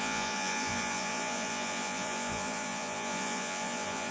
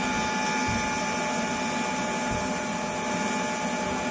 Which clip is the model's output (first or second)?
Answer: first